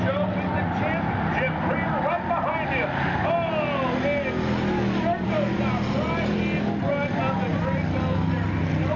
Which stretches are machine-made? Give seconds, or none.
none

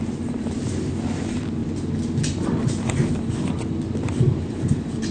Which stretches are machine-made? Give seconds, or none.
none